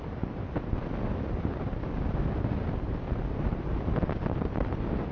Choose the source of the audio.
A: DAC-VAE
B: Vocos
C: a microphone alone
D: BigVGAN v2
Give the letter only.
C